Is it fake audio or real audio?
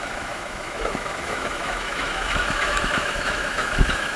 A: fake